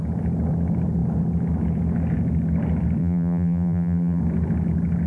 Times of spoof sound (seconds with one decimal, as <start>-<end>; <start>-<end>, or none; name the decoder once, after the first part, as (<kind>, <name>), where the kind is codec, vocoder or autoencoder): 3.0-4.2 (vocoder, BigVGAN v2)